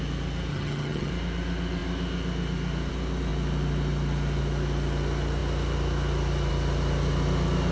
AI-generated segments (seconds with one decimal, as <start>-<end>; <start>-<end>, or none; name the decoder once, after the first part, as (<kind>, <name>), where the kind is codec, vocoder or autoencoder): 0.5-1.1 (vocoder, HiFi-GAN)